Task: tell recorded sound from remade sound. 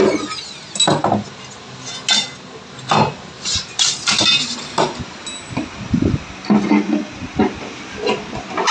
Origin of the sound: recorded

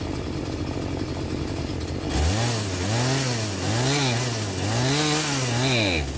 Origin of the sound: recorded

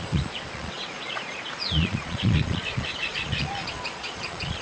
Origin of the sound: remade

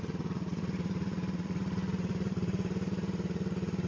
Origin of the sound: remade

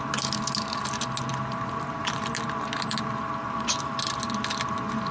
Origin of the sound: recorded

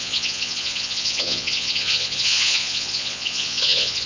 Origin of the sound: remade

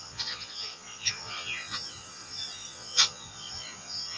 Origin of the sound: remade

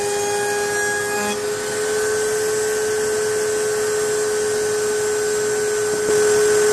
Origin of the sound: recorded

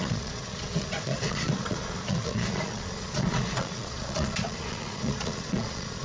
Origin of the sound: remade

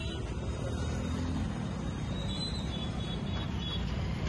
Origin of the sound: recorded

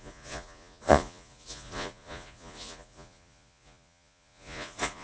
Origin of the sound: remade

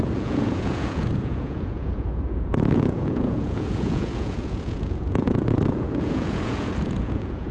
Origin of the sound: remade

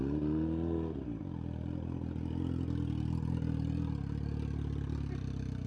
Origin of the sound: recorded